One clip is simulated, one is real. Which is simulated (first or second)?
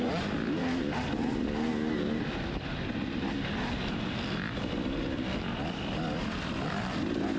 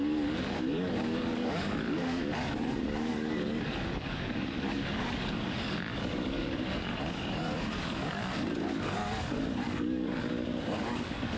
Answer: second